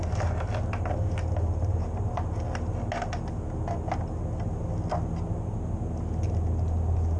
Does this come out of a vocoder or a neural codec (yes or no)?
no